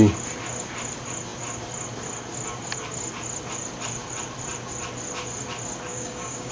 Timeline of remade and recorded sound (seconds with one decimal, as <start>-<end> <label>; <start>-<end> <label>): 0.0-5.9 recorded; 5.9-6.5 remade